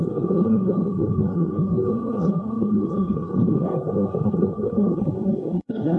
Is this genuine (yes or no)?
no